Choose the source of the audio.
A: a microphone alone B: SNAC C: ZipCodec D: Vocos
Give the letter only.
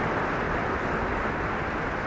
A